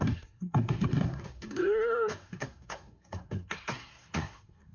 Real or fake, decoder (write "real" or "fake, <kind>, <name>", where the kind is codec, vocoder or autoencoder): fake, codec, SNAC